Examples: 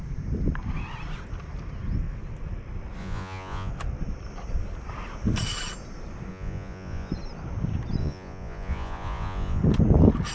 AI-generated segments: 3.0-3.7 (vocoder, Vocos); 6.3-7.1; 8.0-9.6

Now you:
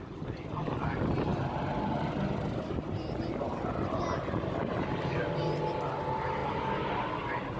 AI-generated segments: none